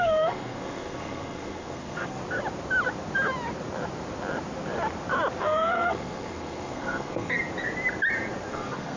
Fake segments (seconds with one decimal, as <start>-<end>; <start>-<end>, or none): 0.0-2.2; 5.4-7.4; 8.5-9.0